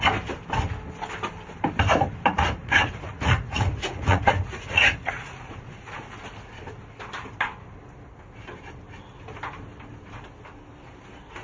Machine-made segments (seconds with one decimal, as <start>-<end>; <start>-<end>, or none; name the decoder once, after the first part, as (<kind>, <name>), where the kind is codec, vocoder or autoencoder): 2.6-6.1 (vocoder, Vocos)